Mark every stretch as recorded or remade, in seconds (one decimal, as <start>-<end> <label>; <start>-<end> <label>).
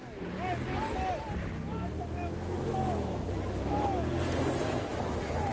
0.0-1.4 recorded; 1.4-3.3 remade; 3.3-4.9 recorded; 4.9-5.5 remade